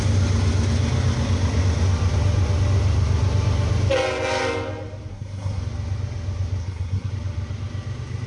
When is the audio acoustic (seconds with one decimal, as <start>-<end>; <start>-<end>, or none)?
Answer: 0.0-5.1; 5.6-6.6; 7.1-8.3